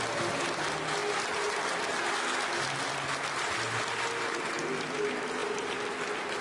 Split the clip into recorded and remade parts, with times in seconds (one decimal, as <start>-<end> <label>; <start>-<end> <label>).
0.0-6.4 recorded

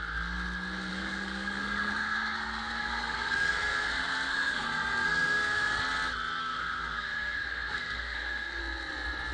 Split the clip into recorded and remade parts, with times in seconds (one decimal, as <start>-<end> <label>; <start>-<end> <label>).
0.0-0.9 recorded; 0.9-5.8 remade; 5.8-6.4 recorded; 6.4-8.6 remade; 8.6-9.3 recorded

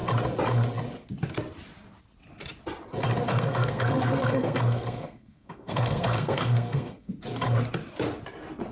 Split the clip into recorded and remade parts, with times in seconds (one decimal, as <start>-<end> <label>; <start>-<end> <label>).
0.0-3.3 recorded; 3.3-7.1 remade; 7.1-8.7 recorded

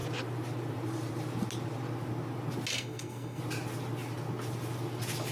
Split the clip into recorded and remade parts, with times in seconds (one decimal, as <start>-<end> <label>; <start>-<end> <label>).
0.0-2.7 recorded; 2.7-3.4 remade; 3.4-5.3 recorded

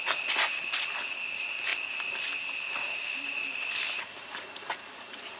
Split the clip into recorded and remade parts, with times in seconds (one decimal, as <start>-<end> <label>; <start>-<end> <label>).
0.0-5.4 recorded

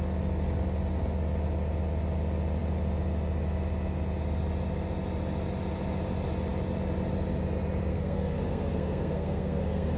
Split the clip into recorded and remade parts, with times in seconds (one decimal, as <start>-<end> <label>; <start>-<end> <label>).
0.0-7.9 recorded; 7.9-10.0 remade